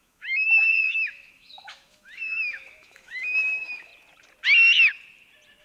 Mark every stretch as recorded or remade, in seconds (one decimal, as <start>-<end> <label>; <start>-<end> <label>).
0.0-3.9 remade; 3.9-5.6 recorded